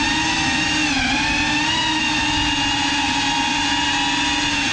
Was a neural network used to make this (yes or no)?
no